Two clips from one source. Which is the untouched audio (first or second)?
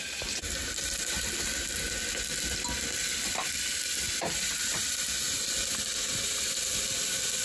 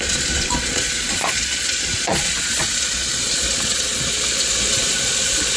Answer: first